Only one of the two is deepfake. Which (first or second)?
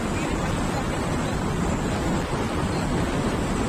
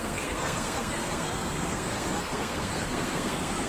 second